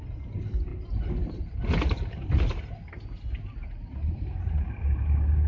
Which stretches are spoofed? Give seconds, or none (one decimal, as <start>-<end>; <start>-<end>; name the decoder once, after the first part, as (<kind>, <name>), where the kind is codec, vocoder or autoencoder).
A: none